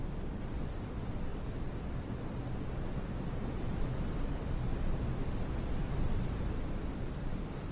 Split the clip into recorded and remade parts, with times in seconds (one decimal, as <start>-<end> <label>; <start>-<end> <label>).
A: 0.0-7.7 recorded